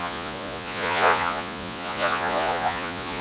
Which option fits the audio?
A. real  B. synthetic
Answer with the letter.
B